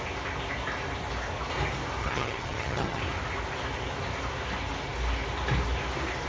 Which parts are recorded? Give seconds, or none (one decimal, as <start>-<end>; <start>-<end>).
0.0-2.0; 3.0-6.3